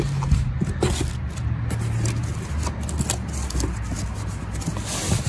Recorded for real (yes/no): yes